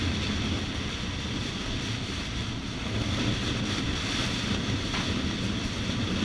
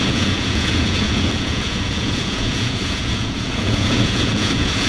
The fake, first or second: second